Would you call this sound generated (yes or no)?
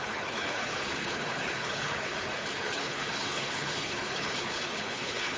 yes